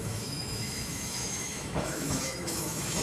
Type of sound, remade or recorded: remade